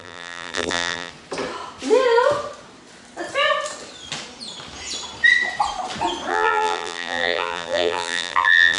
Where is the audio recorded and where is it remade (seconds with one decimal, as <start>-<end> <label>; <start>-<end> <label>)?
0.0-1.1 remade; 1.1-6.3 recorded; 6.3-8.8 remade